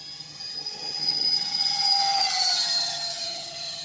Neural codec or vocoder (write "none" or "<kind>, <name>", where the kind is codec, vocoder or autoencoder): vocoder, HiFi-GAN